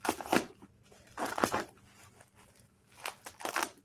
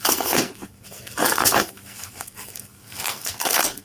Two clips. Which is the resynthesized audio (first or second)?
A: second